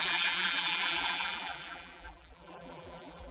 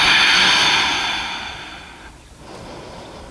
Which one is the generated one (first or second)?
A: first